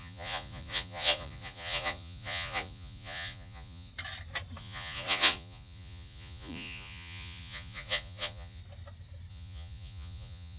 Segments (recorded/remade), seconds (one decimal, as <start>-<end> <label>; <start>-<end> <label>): 0.0-3.9 remade; 3.9-4.6 recorded; 4.6-8.6 remade; 8.6-9.3 recorded; 9.3-10.6 remade